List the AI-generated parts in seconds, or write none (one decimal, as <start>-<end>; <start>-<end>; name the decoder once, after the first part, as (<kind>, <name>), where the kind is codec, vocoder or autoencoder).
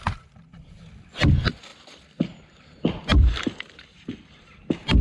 none